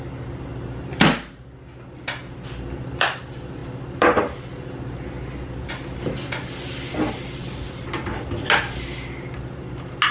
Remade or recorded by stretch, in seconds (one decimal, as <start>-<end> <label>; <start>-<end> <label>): 0.0-10.1 recorded